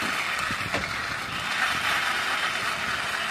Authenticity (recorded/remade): recorded